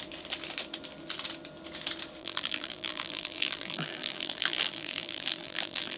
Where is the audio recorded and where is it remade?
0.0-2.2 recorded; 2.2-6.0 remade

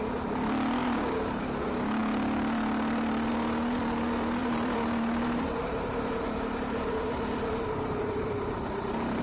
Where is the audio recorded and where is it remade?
0.0-0.8 recorded; 0.8-1.4 remade; 1.4-4.4 recorded; 4.4-9.2 remade

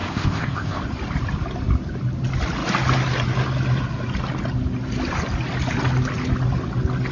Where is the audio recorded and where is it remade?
0.0-0.8 remade; 0.8-7.1 recorded

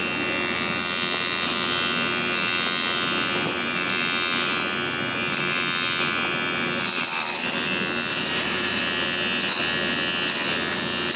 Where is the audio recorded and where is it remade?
0.0-8.1 recorded; 8.1-8.8 remade; 8.8-11.2 recorded

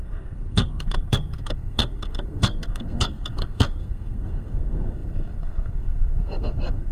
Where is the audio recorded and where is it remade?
0.0-6.9 remade

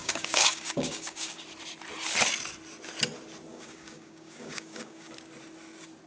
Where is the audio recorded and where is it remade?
0.0-1.4 remade; 1.4-3.5 recorded; 3.5-5.1 remade; 5.1-6.1 recorded

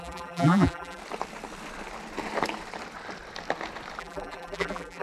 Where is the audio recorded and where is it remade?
0.0-1.0 remade; 1.0-4.0 recorded; 4.0-5.0 remade